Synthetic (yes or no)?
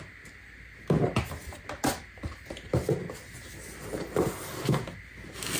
no